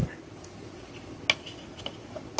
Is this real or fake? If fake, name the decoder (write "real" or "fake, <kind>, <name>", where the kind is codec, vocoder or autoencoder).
real